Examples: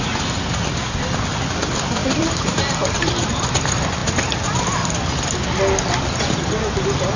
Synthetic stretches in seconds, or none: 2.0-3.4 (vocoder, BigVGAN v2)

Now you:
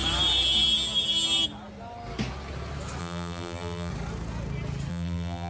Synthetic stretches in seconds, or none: 3.0-3.9 (vocoder, BigVGAN v2); 4.9-5.5

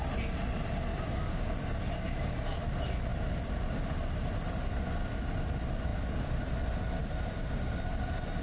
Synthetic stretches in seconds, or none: 0.9-1.5 (codec, DAC)

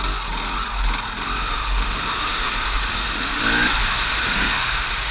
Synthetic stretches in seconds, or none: 1.4-3.4 (autoencoder, DAC-VAE); 3.8-5.1

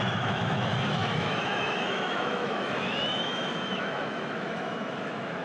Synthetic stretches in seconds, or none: 0.0-5.4 (autoencoder, DAC-VAE)

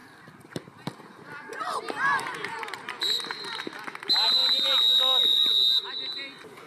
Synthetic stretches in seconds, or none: 0.0-3.3 (vocoder, BigVGAN v2)

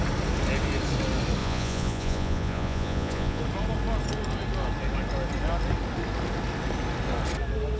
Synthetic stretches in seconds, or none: 1.4-3.4 (vocoder, Vocos)